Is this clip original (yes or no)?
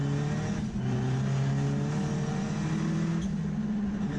yes